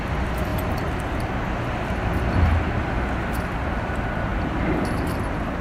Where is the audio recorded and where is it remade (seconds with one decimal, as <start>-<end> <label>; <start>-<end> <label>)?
0.0-5.6 recorded